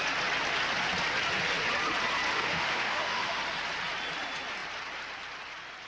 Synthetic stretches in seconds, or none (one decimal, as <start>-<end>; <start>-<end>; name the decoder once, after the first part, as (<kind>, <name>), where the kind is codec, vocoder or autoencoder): 2.3-3.4 (autoencoder, DAC-VAE)